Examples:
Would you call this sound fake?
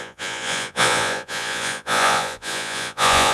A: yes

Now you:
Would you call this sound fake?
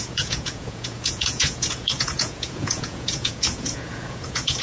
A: yes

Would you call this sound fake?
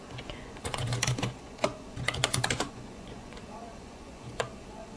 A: yes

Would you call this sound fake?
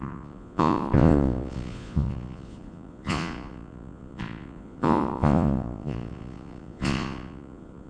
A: yes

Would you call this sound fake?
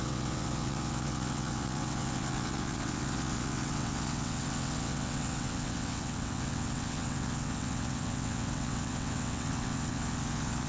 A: yes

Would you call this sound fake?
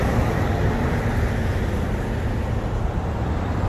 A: no